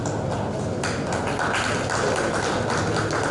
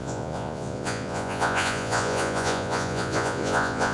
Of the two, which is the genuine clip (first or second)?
first